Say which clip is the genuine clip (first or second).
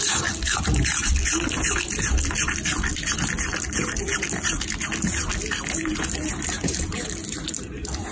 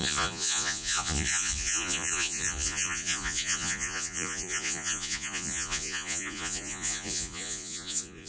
first